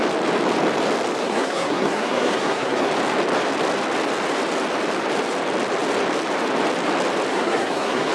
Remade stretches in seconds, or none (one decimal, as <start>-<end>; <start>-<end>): 1.2-2.9; 7.3-8.1